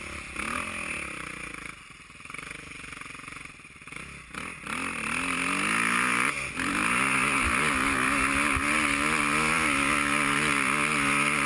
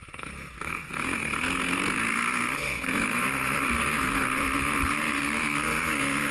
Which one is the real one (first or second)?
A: first